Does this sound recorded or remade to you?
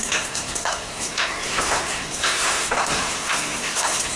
remade